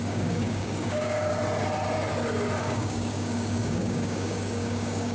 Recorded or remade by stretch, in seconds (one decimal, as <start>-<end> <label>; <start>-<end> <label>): 0.0-1.3 remade; 1.3-2.6 recorded; 2.6-5.1 remade